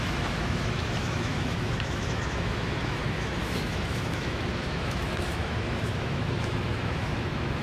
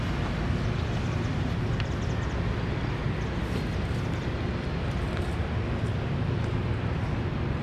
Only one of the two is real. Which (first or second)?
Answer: second